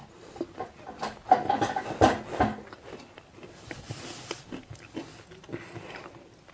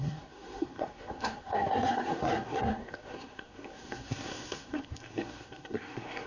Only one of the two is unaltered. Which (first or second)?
first